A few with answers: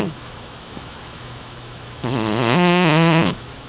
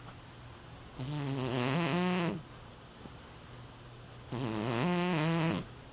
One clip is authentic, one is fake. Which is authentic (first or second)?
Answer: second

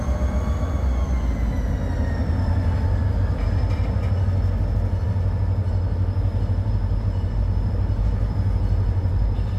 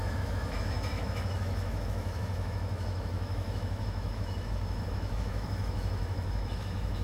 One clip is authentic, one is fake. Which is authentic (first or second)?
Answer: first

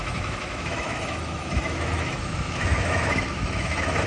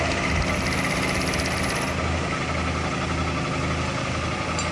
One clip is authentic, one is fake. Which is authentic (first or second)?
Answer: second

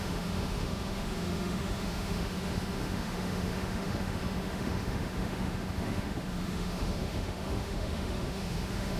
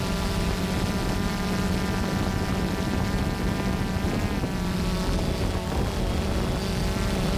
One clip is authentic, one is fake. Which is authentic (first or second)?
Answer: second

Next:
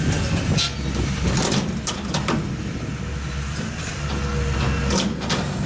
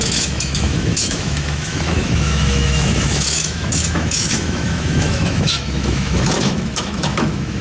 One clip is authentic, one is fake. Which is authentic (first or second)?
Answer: first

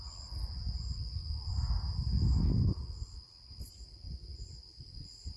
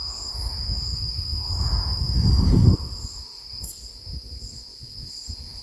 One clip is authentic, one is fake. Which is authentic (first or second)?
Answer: first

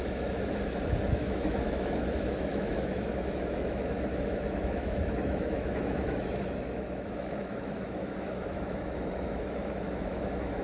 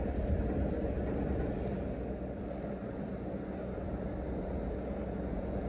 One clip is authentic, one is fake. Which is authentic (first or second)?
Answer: second